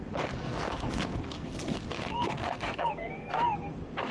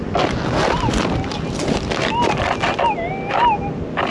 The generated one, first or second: first